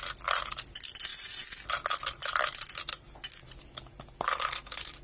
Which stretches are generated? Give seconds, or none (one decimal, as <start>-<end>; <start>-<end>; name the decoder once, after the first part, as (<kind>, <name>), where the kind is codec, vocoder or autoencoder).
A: none